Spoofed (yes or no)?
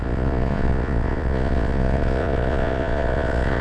yes